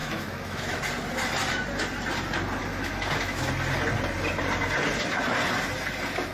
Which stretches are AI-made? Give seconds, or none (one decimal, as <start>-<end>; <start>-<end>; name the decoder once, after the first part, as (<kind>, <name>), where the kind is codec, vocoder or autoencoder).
0.0-0.8 (autoencoder, DAC-VAE); 2.6-3.5